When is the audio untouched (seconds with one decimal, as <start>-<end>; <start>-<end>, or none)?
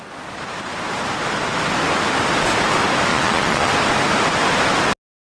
0.0-3.1; 3.7-5.4